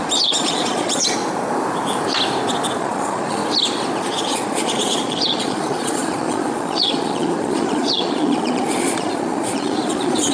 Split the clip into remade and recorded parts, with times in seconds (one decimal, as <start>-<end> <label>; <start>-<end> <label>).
0.0-1.2 remade; 1.2-2.8 recorded; 2.8-3.4 remade; 3.4-4.0 recorded; 4.0-10.3 remade

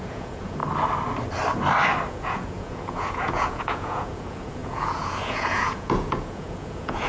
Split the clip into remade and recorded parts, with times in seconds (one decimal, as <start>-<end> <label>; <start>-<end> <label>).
0.0-0.6 remade; 0.6-2.1 recorded; 2.1-7.1 remade

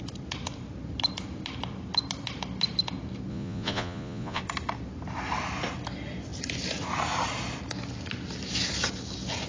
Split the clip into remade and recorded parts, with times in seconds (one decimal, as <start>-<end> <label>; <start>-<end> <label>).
0.0-3.3 recorded; 3.3-4.4 remade; 4.4-9.5 recorded

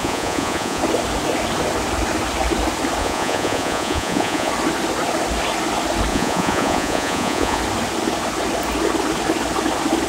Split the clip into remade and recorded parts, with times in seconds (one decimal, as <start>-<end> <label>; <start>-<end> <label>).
0.0-0.8 remade; 0.8-3.0 recorded; 3.0-4.5 remade; 4.5-6.1 recorded; 6.1-7.6 remade; 7.6-10.1 recorded

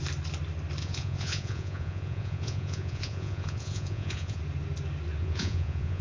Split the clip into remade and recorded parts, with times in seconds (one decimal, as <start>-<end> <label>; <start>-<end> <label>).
0.0-0.8 recorded; 0.8-4.4 remade; 4.4-5.2 recorded; 5.2-6.0 remade

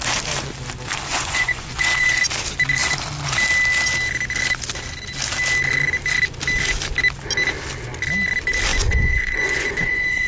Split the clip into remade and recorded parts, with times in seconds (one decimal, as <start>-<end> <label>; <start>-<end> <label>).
0.0-1.1 recorded; 1.1-2.2 remade; 2.2-8.7 recorded; 8.7-10.3 remade